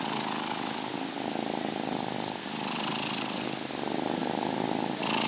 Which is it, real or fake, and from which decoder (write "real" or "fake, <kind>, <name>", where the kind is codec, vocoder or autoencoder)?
real